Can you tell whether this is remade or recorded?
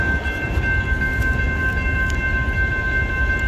recorded